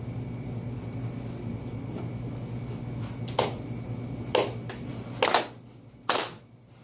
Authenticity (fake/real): real